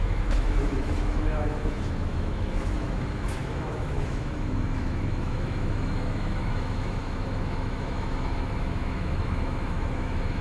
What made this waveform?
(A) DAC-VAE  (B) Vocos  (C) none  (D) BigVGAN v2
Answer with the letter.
A